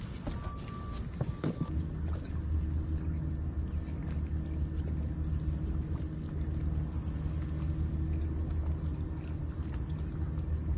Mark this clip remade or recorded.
recorded